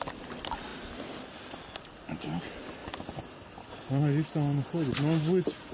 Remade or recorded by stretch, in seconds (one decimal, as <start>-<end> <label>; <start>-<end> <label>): 0.0-5.7 recorded